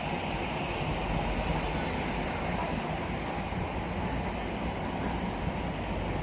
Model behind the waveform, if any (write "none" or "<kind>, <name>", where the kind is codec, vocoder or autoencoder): none